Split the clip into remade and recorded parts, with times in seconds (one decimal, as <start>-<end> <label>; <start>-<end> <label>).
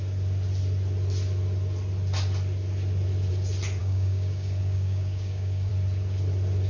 0.0-3.8 recorded; 3.8-5.7 remade; 5.7-6.7 recorded